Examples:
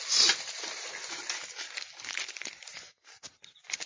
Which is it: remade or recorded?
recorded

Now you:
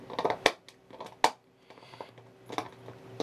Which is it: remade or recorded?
recorded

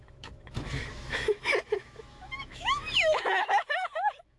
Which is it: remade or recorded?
remade